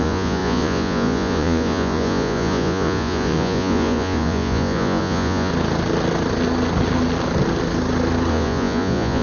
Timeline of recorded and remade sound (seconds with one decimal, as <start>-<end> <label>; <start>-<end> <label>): 0.0-5.5 remade; 5.5-8.3 recorded; 8.3-9.2 remade